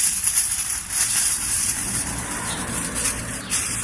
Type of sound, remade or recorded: remade